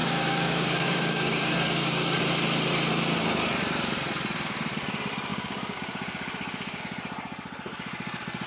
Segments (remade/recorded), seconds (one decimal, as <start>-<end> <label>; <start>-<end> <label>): 0.0-2.2 remade; 2.2-5.3 recorded; 5.3-6.8 remade; 6.8-8.5 recorded